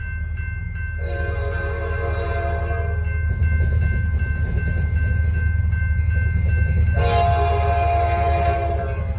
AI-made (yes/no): no